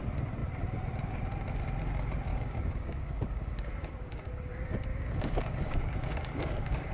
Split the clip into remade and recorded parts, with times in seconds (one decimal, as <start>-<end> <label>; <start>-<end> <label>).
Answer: 0.0-2.3 recorded; 2.3-4.5 remade; 4.5-4.9 recorded; 4.9-6.9 remade